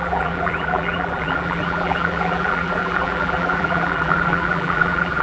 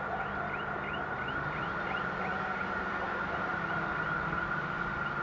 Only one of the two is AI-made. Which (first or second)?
first